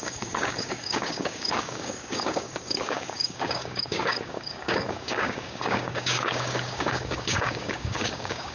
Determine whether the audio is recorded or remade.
remade